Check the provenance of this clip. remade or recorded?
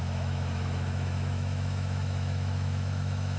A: remade